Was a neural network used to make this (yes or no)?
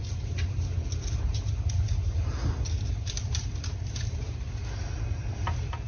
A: no